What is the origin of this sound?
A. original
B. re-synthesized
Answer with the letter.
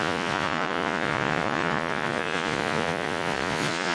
B